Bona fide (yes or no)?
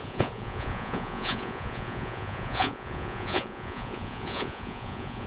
no